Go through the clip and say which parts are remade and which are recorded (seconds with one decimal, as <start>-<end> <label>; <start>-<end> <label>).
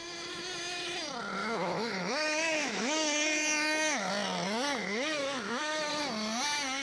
0.0-1.4 recorded; 1.4-4.1 remade; 4.1-4.8 recorded; 4.8-5.9 remade; 5.9-6.8 recorded